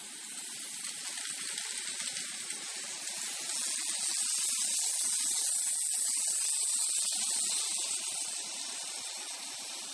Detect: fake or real real